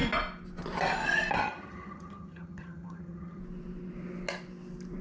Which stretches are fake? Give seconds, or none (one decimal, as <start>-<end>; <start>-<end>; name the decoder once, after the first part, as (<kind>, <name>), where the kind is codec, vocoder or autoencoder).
1.4-3.4 (vocoder, HiFi-GAN)